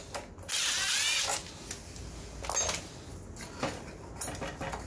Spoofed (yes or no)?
no